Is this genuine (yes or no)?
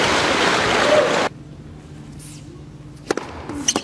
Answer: yes